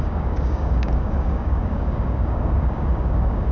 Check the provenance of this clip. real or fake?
fake